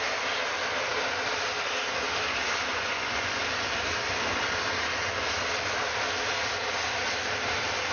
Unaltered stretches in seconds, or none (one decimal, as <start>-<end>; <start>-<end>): 0.0-2.7; 3.4-7.9